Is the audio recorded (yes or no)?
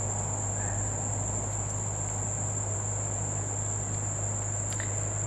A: yes